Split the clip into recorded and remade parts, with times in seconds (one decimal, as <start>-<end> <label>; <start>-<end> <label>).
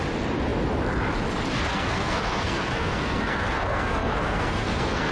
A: 0.0-1.7 recorded; 1.7-5.1 remade